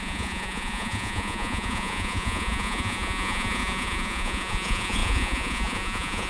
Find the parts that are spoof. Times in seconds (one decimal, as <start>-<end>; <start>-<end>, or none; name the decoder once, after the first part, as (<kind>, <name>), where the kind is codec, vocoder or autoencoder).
0.0-6.3 (vocoder, Vocos)